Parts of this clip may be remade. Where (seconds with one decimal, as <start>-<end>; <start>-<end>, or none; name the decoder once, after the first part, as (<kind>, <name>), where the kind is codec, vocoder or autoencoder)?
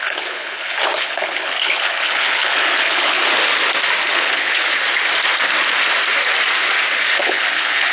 0.0-3.2 (codec, HILCodec); 4.1-4.7; 7.2-7.9